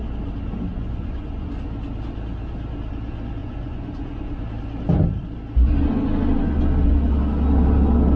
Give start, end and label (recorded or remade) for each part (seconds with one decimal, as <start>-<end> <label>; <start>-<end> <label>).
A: 0.0-0.7 recorded; 0.7-1.5 remade; 1.5-3.4 recorded; 3.4-4.4 remade; 4.4-8.2 recorded